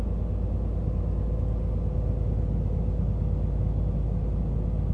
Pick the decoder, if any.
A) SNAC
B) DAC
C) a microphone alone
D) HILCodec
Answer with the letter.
C